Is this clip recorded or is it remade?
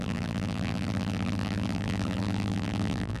remade